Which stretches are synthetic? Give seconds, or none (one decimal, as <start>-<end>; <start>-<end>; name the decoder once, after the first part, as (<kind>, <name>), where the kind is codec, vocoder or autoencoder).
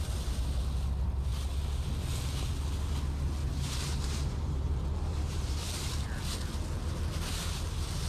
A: 3.4-5.9 (vocoder, BigVGAN v2)